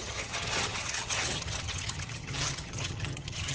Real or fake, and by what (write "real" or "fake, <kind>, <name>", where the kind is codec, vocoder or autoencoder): fake, vocoder, HiFi-GAN